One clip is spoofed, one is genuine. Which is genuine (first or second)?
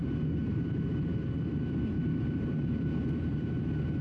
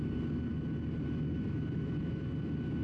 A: second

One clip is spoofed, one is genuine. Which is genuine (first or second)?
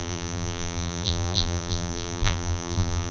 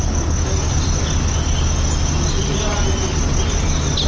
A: second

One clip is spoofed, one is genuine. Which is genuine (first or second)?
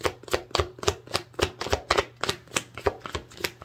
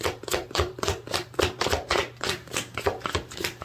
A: first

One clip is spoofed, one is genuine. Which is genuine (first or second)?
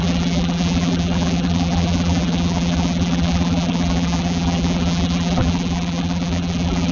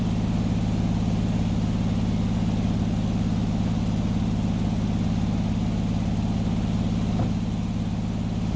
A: second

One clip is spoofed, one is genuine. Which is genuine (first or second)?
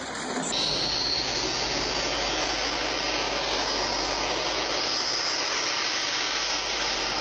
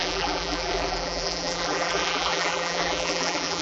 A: first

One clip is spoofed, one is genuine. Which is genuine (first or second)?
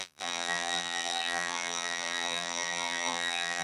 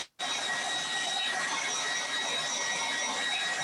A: second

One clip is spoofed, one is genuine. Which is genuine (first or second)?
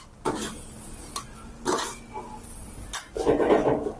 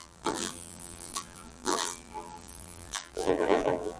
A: first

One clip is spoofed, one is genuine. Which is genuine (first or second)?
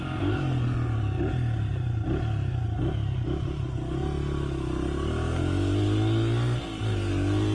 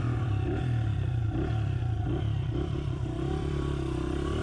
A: first